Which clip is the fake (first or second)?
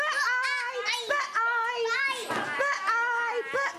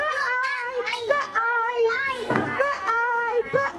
second